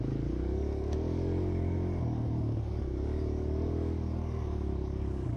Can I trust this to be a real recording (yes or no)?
no